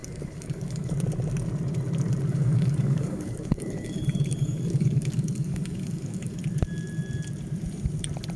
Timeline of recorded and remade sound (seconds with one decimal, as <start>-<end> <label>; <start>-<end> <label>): 0.0-0.9 remade; 0.9-2.3 recorded; 2.3-6.4 remade; 6.4-8.4 recorded